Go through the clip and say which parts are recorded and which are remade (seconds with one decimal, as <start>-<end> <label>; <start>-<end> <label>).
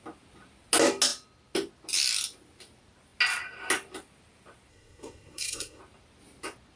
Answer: 0.0-4.7 recorded; 4.7-5.8 remade; 5.8-6.8 recorded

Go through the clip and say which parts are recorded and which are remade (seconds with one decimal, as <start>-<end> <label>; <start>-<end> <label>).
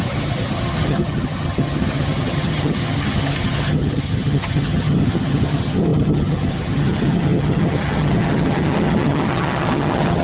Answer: 0.0-10.2 remade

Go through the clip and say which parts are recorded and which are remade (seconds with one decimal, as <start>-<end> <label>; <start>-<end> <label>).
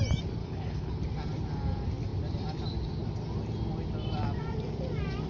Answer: 0.0-0.4 recorded; 0.4-0.9 remade; 0.9-5.3 recorded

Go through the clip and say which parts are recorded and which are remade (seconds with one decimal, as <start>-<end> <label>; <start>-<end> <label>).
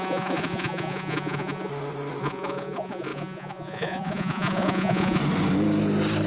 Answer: 0.0-1.7 remade; 1.7-2.2 recorded; 2.2-5.2 remade; 5.2-6.3 recorded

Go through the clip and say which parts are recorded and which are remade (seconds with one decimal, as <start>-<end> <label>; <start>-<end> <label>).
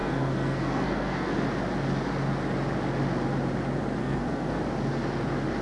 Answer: 0.0-1.3 remade; 1.3-4.0 recorded; 4.0-4.6 remade; 4.6-5.6 recorded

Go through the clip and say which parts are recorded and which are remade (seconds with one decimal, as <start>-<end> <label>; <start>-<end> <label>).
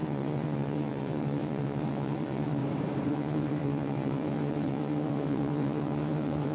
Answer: 0.0-2.6 remade; 2.6-3.1 recorded; 3.1-6.5 remade